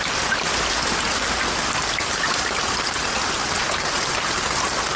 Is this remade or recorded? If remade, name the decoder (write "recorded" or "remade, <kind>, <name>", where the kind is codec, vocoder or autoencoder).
recorded